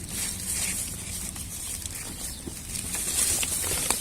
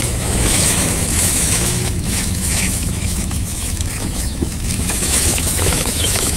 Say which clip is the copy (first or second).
second